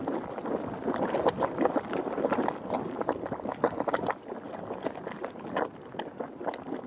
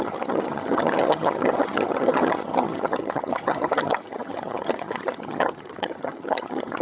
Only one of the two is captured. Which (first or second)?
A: first